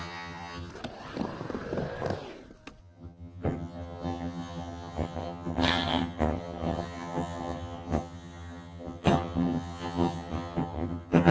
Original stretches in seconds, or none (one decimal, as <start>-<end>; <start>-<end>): 0.7-2.8